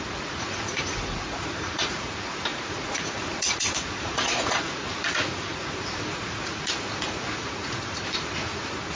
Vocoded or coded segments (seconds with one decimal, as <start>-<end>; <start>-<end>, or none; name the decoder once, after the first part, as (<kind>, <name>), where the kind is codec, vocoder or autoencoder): 0.0-9.0 (vocoder, Vocos)